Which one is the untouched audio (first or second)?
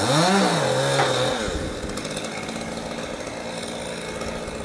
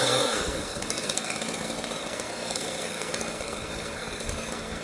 first